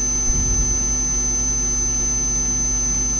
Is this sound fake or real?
real